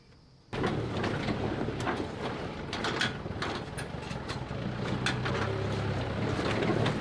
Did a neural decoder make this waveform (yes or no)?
no